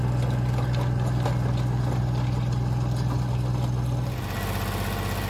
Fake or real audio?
real